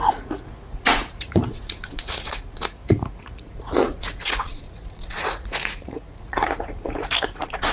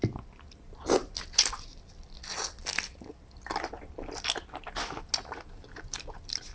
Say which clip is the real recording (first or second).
second